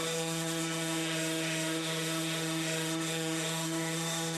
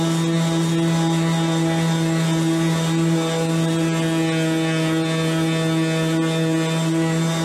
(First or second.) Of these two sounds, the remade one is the first